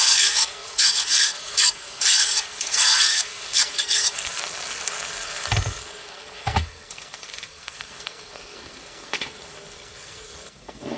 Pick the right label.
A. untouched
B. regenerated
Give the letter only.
B